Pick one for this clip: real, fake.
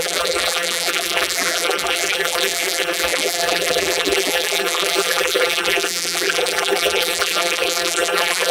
fake